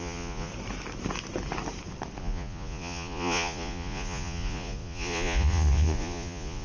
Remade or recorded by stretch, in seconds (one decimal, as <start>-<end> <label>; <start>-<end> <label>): 0.0-0.5 remade; 0.5-2.2 recorded; 2.2-6.6 remade